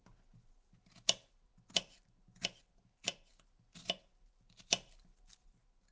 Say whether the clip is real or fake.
real